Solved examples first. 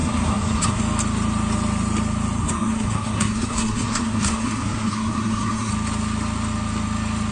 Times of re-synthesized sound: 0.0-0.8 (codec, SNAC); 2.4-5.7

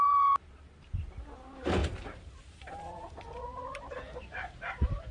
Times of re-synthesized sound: 1.8-5.1 (vocoder, BigVGAN v2)